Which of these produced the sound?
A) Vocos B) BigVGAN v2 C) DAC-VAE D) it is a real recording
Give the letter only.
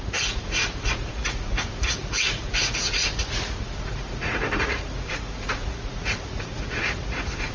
A